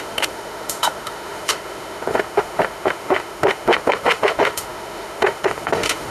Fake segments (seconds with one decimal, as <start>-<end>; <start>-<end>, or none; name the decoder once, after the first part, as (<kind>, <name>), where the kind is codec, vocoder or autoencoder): 0.0-6.1 (autoencoder, DAC-VAE)